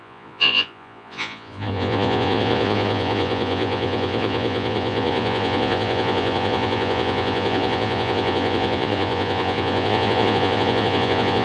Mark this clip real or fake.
fake